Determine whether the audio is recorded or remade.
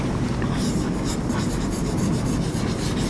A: recorded